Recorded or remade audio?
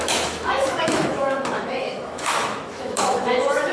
remade